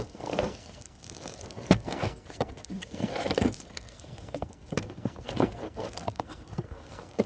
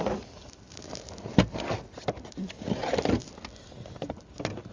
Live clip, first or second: second